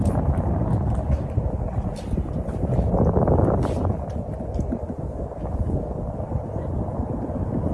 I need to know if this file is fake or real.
real